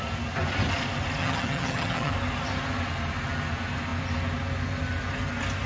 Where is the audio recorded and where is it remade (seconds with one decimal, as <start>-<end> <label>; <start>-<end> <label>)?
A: 0.0-1.2 recorded; 1.2-2.1 remade; 2.1-5.7 recorded